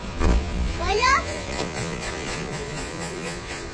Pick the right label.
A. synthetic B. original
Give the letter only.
A